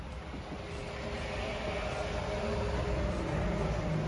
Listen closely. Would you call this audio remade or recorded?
recorded